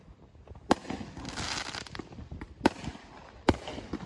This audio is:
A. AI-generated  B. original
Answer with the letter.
B